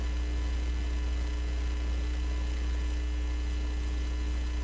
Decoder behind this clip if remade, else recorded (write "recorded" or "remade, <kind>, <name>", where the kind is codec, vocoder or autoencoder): recorded